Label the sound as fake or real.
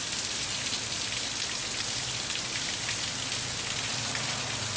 real